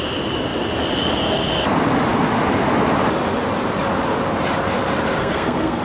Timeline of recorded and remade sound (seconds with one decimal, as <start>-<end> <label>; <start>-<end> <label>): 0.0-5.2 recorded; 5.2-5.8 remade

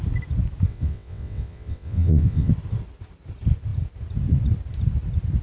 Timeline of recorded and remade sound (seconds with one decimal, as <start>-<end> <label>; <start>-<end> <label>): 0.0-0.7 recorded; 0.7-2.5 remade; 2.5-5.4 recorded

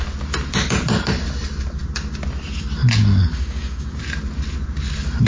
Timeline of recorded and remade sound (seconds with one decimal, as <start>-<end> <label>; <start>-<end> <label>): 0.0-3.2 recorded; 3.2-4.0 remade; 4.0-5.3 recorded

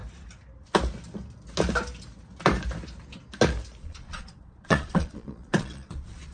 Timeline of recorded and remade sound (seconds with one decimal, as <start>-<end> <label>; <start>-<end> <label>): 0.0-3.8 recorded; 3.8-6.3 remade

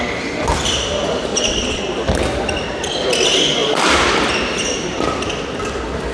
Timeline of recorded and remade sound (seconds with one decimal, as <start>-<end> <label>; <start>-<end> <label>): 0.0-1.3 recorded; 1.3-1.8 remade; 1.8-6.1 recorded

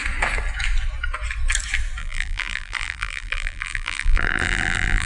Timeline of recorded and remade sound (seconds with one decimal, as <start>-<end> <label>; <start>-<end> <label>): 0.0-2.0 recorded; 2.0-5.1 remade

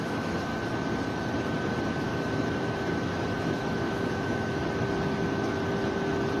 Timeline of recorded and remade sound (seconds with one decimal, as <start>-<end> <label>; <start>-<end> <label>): 0.0-0.5 remade; 0.5-2.0 recorded; 2.0-4.6 remade; 4.6-6.4 recorded

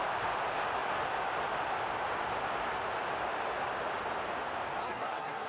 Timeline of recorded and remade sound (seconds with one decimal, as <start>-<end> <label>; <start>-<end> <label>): 0.0-4.8 recorded; 4.8-5.5 remade